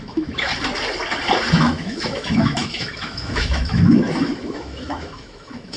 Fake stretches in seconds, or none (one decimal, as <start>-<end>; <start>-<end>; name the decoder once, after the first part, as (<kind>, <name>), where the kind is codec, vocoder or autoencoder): 0.0-0.5 (autoencoder, DAC-VAE); 1.5-5.8